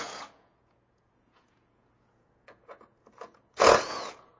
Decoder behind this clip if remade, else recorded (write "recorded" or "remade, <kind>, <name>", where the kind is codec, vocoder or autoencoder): remade, vocoder, Vocos